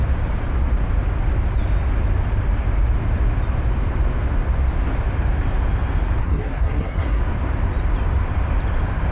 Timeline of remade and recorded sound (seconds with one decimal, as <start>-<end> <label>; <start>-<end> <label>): 0.0-6.2 recorded; 6.2-7.2 remade; 7.2-9.1 recorded